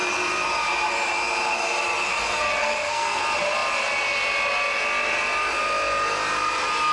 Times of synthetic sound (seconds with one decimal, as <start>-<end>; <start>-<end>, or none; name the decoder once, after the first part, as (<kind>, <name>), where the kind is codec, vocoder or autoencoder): 2.6-3.2 (codec, SNAC)